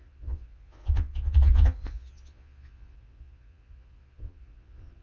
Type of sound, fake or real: fake